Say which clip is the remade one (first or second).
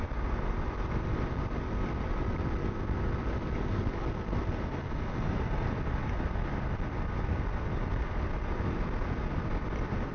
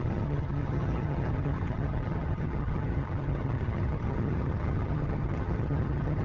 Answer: second